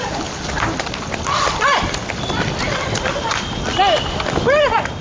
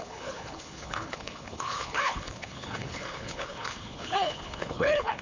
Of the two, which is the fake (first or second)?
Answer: second